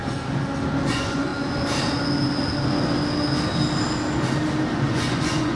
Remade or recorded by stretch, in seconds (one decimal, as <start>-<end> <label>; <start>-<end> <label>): 0.0-0.9 recorded; 0.9-1.3 remade; 1.3-4.7 recorded; 4.7-5.6 remade